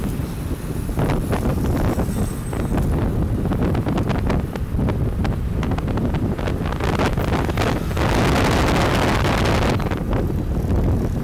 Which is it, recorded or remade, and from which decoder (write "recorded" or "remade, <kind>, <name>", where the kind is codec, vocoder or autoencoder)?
recorded